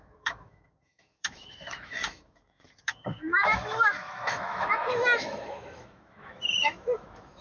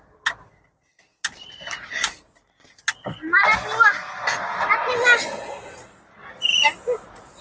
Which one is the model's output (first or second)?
first